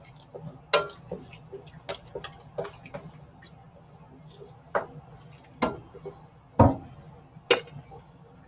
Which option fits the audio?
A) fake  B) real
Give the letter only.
B